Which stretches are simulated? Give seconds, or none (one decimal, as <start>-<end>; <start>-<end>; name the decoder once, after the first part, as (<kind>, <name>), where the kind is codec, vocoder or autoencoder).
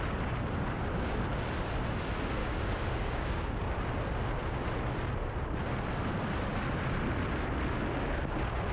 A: 2.4-3.5 (codec, DAC)